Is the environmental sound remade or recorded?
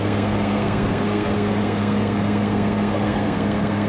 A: remade